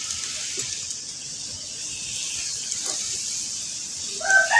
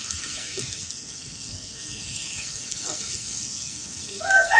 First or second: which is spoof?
second